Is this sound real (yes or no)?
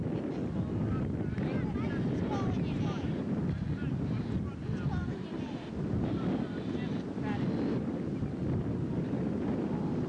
yes